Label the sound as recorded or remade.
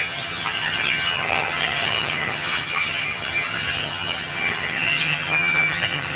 remade